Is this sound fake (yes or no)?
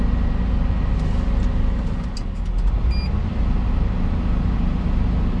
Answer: no